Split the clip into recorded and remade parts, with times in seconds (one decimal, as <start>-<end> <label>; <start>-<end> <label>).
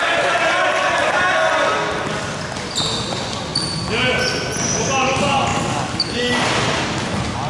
0.0-7.5 recorded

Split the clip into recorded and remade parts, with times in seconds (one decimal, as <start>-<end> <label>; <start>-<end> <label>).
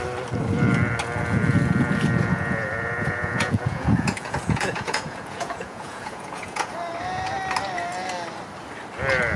0.0-2.3 recorded; 2.3-6.7 remade; 6.7-9.4 recorded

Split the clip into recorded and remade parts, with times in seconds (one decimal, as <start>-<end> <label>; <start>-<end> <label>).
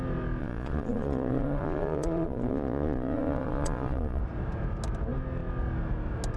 0.0-0.4 recorded; 0.4-4.2 remade; 4.2-6.4 recorded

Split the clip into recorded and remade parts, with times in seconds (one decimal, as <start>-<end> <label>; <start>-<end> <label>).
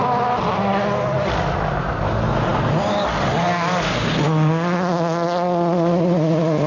0.0-6.7 recorded